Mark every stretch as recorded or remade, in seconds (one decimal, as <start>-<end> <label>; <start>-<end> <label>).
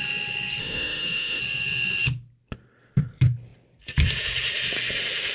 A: 0.0-0.6 recorded; 0.6-1.4 remade; 1.4-5.3 recorded